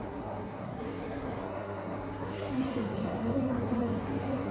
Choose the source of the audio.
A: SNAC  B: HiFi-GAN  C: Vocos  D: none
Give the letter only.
A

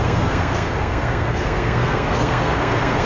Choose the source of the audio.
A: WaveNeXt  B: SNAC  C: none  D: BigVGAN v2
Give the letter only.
B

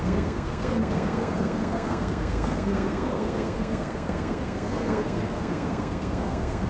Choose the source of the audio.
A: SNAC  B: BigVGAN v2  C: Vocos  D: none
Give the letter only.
A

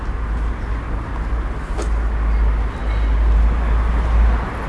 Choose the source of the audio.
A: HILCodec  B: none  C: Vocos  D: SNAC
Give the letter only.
B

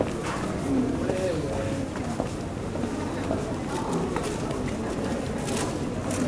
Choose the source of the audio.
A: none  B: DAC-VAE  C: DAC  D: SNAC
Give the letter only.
A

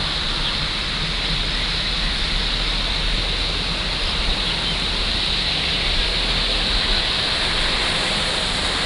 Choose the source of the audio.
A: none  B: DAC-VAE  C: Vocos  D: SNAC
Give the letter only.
A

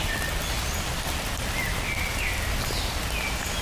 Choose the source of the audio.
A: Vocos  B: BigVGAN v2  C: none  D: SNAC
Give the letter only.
C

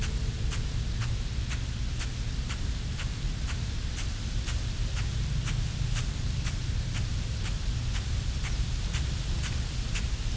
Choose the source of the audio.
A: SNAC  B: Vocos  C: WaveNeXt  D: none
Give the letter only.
D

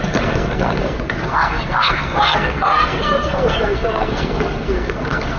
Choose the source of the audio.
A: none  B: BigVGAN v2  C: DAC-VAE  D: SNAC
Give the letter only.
D